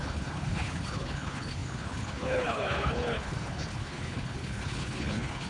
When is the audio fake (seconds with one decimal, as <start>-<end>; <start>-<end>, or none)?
0.0-5.5